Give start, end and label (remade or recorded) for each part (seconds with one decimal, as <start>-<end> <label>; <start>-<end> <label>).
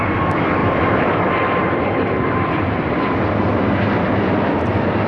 0.0-0.6 recorded; 0.6-3.2 remade; 3.2-5.1 recorded